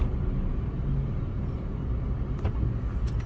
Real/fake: real